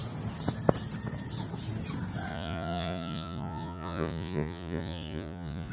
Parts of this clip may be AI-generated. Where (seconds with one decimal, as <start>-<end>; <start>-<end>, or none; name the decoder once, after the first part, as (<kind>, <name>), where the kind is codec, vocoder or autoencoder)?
2.3-5.7 (vocoder, Vocos)